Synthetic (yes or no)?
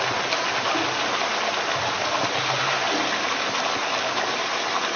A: no